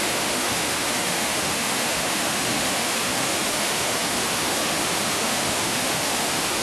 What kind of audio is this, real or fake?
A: fake